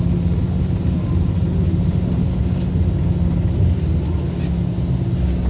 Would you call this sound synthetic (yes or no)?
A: no